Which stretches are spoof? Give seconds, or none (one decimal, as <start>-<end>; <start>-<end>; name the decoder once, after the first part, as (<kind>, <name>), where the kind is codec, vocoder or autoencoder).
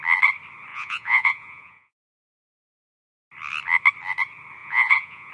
0.7-2.4 (vocoder, Vocos); 4.6-5.3